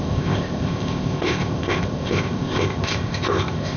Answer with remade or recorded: remade